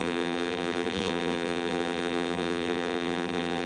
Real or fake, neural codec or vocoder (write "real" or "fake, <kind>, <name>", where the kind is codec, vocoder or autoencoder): fake, vocoder, BigVGAN v2